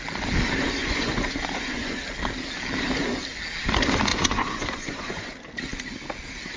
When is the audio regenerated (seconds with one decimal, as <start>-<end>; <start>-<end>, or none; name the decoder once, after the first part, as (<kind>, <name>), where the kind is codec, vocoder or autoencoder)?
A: 0.8-2.0 (vocoder, Vocos); 4.1-5.3